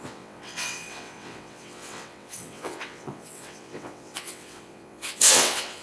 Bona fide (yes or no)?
no